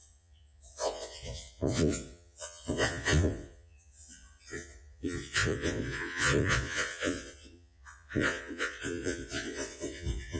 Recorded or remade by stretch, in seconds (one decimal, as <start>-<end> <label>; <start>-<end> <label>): 0.0-10.4 remade